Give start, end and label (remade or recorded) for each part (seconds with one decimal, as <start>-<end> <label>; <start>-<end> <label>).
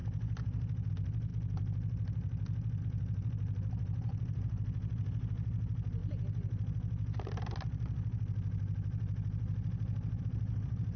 0.0-11.0 recorded